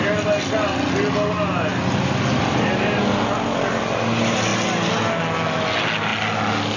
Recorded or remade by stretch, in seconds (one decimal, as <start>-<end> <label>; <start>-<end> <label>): 0.0-6.8 recorded